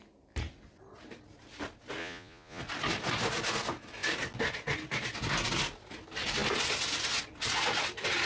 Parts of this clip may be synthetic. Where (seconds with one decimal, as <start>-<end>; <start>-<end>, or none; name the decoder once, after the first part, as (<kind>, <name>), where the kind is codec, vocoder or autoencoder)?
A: 2.0-2.6 (vocoder, Vocos)